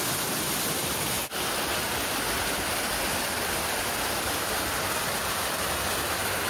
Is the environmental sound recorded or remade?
recorded